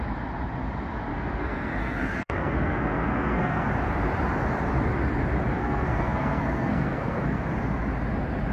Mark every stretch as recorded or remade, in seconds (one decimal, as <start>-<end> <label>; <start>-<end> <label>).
0.0-1.1 recorded; 1.1-3.7 remade; 3.7-5.6 recorded; 5.6-7.4 remade; 7.4-8.5 recorded

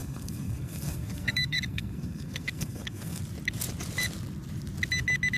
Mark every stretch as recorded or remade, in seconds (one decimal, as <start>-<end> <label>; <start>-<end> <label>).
0.0-3.2 remade; 3.2-5.4 recorded

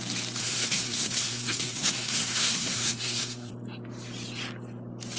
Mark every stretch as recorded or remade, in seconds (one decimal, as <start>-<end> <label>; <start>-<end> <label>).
0.0-0.4 recorded; 0.4-3.5 remade; 3.5-5.2 recorded

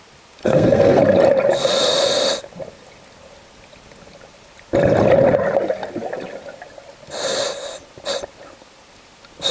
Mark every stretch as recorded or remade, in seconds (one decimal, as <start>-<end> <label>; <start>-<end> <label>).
0.0-0.4 recorded; 0.4-1.0 remade; 1.0-9.5 recorded

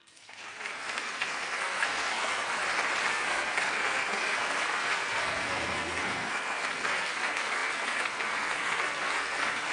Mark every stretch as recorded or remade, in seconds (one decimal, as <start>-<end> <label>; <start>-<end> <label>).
0.0-2.6 remade; 2.6-3.1 recorded; 3.1-9.7 remade

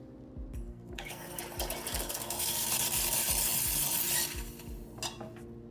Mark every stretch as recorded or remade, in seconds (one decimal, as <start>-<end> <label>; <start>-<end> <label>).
0.0-0.7 recorded; 0.7-1.4 remade; 1.4-1.9 recorded; 1.9-2.7 remade; 2.7-5.7 recorded

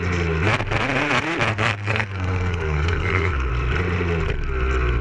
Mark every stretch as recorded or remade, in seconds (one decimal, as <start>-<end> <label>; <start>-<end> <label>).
0.0-1.5 recorded; 1.5-3.5 remade; 3.5-5.0 recorded